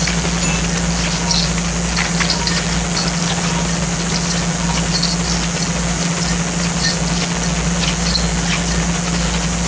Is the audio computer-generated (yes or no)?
no